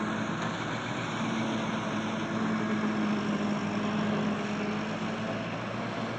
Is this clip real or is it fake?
real